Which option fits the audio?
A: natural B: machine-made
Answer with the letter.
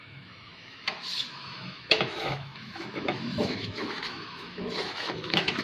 B